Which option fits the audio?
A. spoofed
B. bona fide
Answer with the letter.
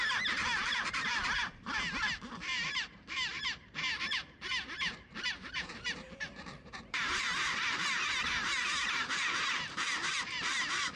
A